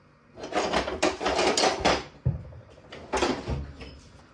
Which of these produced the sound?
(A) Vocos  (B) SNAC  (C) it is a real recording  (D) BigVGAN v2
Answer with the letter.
C